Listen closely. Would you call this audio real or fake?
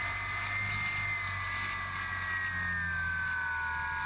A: real